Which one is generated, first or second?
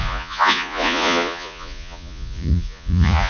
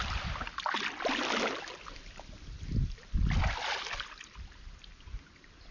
first